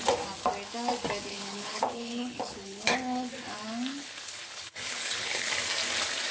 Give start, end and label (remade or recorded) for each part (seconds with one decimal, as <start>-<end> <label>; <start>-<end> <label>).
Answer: 0.0-1.3 recorded; 1.3-3.3 remade; 3.3-3.9 recorded; 3.9-5.5 remade; 5.5-6.3 recorded